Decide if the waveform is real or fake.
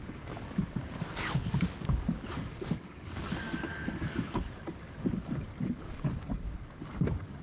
fake